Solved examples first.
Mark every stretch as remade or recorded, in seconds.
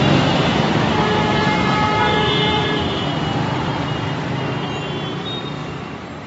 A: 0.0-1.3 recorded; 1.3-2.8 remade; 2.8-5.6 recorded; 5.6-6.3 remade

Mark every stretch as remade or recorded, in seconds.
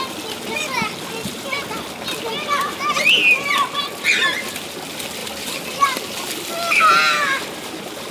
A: 0.0-2.3 recorded; 2.3-3.0 remade; 3.0-5.2 recorded; 5.2-6.5 remade; 6.5-8.1 recorded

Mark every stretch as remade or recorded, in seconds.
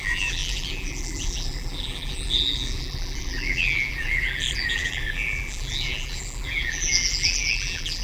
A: 0.0-8.0 remade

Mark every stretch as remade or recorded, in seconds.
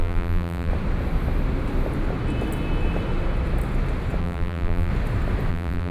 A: 0.0-0.7 remade; 0.7-4.2 recorded; 4.2-4.9 remade; 4.9-5.5 recorded; 5.5-5.9 remade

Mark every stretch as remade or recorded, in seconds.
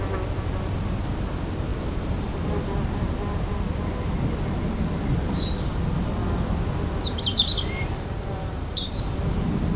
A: 0.0-1.7 recorded; 1.7-2.7 remade; 2.7-7.3 recorded; 7.3-9.2 remade; 9.2-9.8 recorded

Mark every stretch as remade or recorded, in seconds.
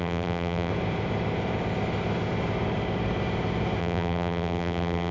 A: 0.0-0.7 remade; 0.7-3.8 recorded; 3.8-5.1 remade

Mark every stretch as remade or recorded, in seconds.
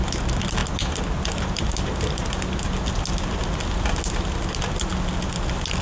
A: 0.0-5.8 recorded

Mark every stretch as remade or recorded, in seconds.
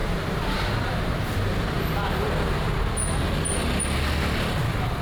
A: 0.0-2.9 remade; 2.9-5.0 recorded